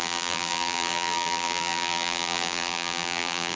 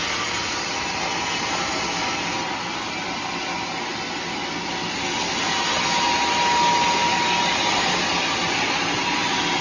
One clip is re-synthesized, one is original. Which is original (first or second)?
second